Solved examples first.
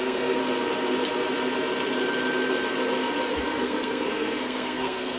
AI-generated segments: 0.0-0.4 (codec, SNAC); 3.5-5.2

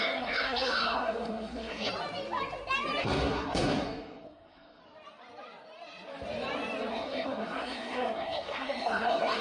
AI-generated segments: 0.0-1.9 (codec, SNAC); 3.0-4.8; 6.9-9.4

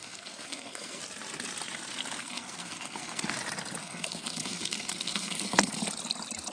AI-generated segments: 0.0-1.0 (codec, SNAC); 2.2-3.3; 3.8-5.8

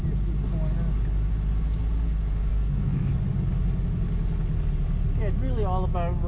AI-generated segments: 2.5-3.1 (codec, SNAC)

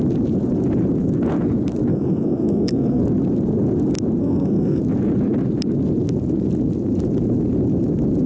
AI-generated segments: 1.9-3.0 (codec, SNAC); 4.2-4.8

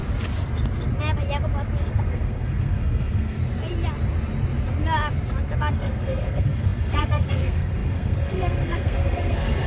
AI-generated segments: 1.8-3.4 (codec, SNAC); 5.7-9.7

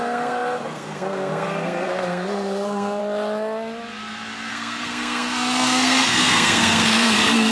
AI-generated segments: 0.0-3.0 (codec, SNAC); 4.5-7.5